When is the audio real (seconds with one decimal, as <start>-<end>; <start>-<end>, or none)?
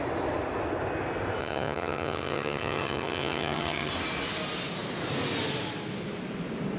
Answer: 0.0-1.4; 3.9-6.8